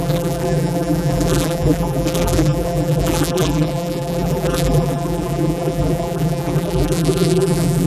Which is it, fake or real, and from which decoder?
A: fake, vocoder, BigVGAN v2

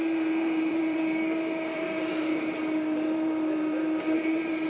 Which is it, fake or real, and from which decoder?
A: fake, vocoder, BigVGAN v2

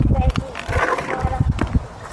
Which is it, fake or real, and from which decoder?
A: fake, vocoder, BigVGAN v2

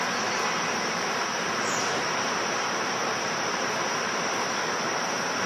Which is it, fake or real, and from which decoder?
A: fake, vocoder, BigVGAN v2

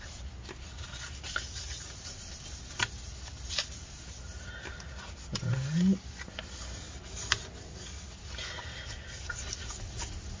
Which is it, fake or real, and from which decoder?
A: real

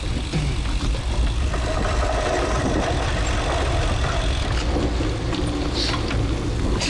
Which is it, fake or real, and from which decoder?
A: real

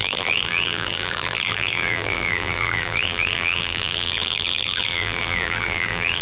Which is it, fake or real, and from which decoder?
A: fake, vocoder, BigVGAN v2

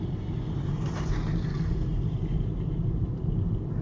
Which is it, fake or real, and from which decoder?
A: real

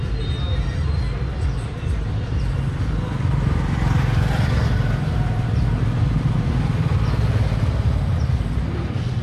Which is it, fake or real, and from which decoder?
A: real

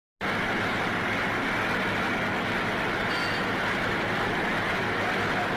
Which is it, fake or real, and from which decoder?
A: real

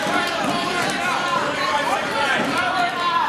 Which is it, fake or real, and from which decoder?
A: fake, vocoder, BigVGAN v2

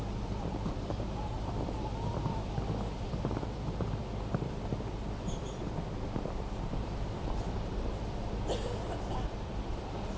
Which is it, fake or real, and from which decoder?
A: fake, vocoder, BigVGAN v2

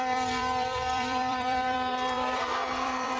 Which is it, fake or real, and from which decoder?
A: fake, vocoder, BigVGAN v2